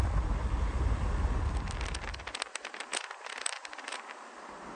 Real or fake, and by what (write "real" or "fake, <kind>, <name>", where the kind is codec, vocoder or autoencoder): real